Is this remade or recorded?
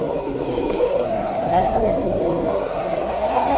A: remade